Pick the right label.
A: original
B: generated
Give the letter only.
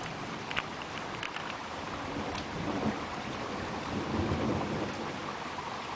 B